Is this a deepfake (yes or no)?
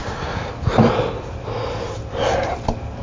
no